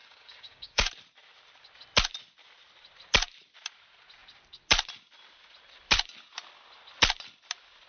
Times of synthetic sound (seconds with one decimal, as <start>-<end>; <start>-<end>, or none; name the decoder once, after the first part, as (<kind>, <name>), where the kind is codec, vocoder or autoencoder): 0.0-0.9 (codec, DAC)

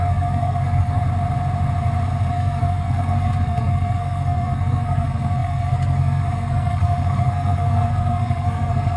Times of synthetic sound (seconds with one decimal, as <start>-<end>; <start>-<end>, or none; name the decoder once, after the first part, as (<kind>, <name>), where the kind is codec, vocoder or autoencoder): 0.0-1.0 (codec, SNAC); 2.3-9.0